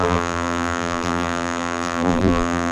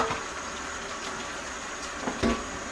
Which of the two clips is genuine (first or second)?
second